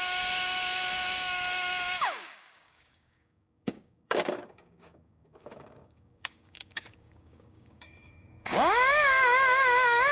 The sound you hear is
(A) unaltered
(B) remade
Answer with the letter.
B